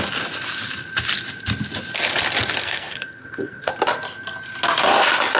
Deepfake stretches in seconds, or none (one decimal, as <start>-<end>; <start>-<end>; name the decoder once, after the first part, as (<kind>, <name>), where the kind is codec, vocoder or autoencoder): 2.6-3.7 (codec, SNAC)